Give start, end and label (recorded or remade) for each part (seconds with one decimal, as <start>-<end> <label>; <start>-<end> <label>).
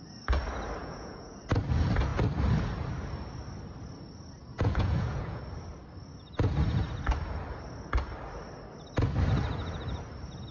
0.0-0.8 recorded; 0.8-1.4 remade; 1.4-4.4 recorded; 4.4-5.4 remade; 5.4-10.5 recorded